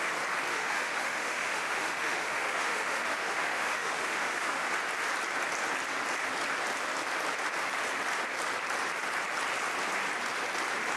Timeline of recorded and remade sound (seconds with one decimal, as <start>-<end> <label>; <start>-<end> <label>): 0.0-0.5 recorded; 0.5-4.7 remade; 4.7-11.0 recorded